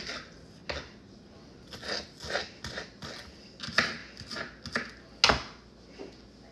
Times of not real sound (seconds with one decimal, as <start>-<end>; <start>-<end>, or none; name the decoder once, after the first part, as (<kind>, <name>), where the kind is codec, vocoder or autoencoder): none